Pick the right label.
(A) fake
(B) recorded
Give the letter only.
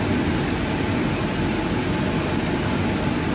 B